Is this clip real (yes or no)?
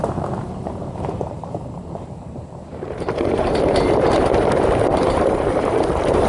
no